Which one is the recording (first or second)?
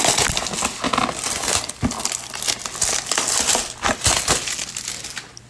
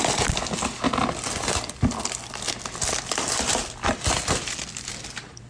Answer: first